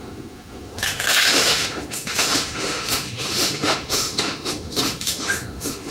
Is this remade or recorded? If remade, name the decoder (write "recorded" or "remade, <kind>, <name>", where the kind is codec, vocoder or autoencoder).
remade, autoencoder, DAC-VAE